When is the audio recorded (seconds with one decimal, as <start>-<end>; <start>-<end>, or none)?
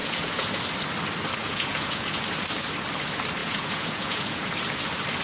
0.6-1.4; 2.2-3.4; 4.4-5.2